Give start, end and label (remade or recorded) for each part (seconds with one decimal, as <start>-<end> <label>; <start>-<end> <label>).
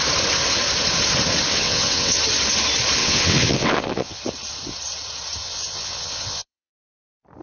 0.0-1.5 recorded; 1.5-2.2 remade; 2.2-3.0 recorded; 3.0-4.2 remade; 4.2-5.4 recorded; 5.4-6.7 remade; 6.7-7.4 recorded